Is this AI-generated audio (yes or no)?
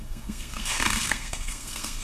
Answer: yes